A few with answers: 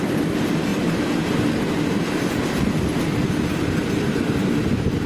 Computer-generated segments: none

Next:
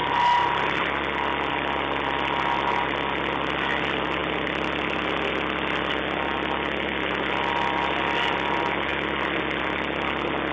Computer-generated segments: none

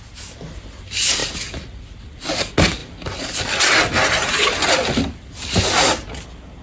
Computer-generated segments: none

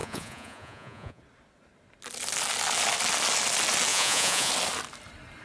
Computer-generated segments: 0.0-1.2 (vocoder, Vocos); 3.9-4.5

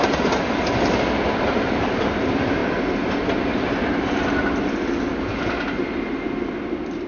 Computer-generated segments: none

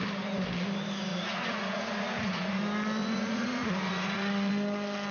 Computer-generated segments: 1.1-2.6 (vocoder, Vocos); 3.0-4.5

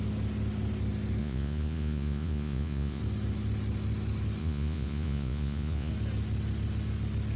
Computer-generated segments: 1.2-3.0 (vocoder, Vocos); 4.4-5.9

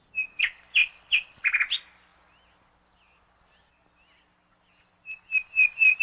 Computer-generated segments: none